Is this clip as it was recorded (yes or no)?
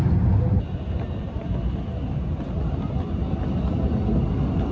yes